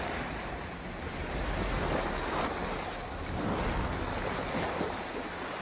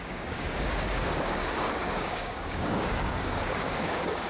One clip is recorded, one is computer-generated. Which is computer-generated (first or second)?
second